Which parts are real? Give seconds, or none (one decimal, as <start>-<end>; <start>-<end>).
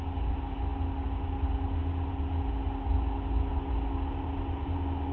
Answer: 0.0-5.1